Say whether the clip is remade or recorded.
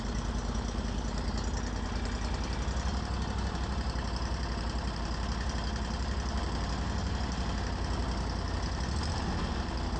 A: recorded